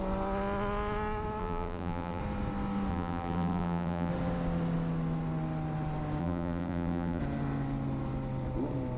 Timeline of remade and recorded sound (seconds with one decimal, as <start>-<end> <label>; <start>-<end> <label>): 0.0-1.4 recorded; 1.4-2.2 remade; 2.2-2.9 recorded; 2.9-4.1 remade; 4.1-6.2 recorded; 6.2-7.2 remade; 7.2-9.0 recorded